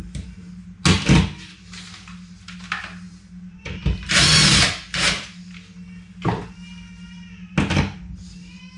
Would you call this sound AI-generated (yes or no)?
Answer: no